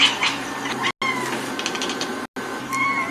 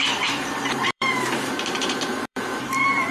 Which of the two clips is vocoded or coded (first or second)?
second